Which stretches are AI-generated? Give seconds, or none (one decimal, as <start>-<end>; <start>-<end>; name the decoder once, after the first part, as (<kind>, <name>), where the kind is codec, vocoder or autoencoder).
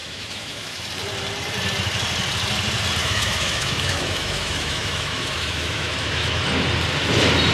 0.0-0.9 (autoencoder, DAC-VAE); 3.0-6.4